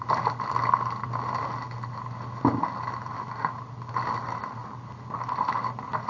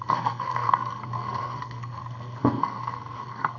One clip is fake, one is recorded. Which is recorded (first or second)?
first